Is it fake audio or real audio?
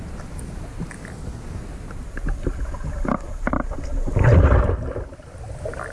real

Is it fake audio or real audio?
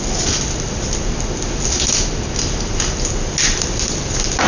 real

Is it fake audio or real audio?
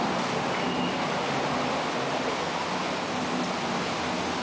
real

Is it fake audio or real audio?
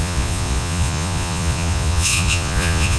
fake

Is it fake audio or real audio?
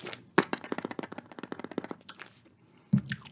real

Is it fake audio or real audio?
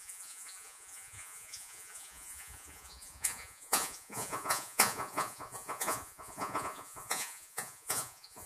fake